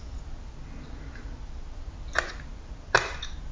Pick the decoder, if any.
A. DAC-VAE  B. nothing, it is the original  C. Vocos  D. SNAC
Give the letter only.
B